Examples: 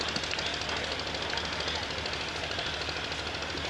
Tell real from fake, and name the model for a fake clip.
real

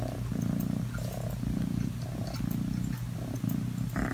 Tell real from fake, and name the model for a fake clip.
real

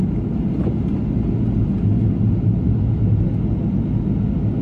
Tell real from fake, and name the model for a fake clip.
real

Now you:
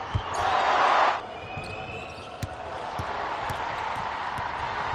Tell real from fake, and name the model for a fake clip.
real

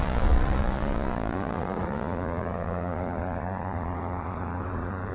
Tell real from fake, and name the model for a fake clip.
fake, vocoder, Vocos